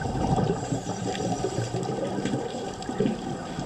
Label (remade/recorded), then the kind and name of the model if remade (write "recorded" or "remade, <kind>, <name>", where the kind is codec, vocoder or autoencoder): remade, vocoder, BigVGAN v2